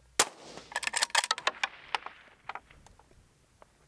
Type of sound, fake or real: real